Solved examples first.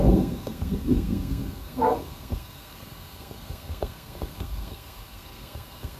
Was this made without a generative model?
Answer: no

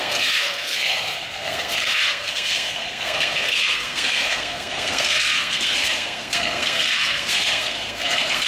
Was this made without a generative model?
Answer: no